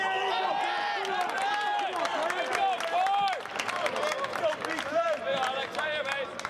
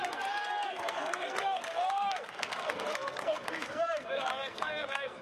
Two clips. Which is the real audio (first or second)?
first